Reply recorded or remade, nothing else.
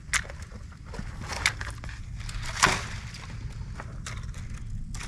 recorded